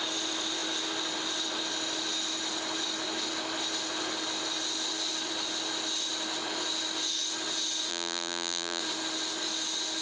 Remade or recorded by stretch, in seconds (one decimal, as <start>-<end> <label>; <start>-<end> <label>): 0.0-7.9 recorded; 7.9-8.8 remade; 8.8-10.0 recorded